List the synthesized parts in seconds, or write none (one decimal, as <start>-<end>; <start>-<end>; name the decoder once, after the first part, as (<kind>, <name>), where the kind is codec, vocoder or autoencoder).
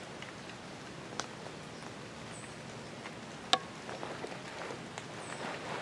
none